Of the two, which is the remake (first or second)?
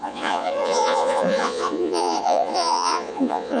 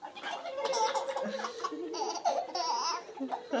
first